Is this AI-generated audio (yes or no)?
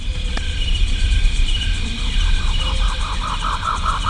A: yes